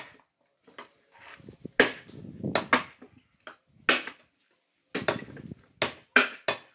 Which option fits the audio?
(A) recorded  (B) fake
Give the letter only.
A